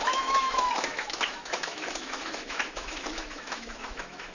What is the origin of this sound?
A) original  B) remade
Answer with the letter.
B